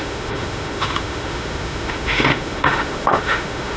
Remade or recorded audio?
remade